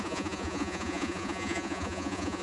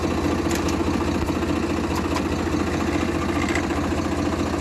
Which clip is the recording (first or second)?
second